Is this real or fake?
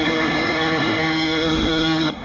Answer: fake